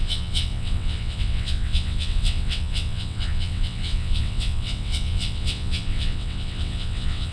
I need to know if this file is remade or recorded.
remade